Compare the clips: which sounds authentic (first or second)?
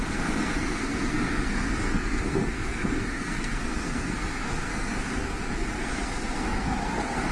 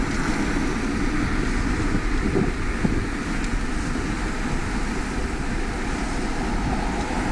second